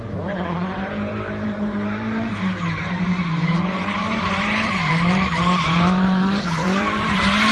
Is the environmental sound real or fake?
fake